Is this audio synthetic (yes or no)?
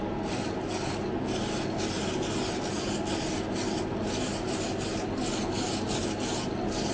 no